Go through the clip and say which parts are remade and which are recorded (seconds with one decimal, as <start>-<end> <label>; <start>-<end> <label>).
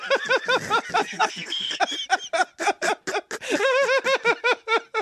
0.0-1.0 recorded; 1.0-1.8 remade; 1.8-5.0 recorded